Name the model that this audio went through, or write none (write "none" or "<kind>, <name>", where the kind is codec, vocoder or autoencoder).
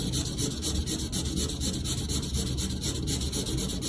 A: none